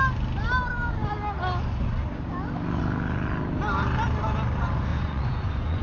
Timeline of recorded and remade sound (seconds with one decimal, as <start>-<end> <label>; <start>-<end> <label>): 0.0-4.9 recorded; 4.9-5.8 remade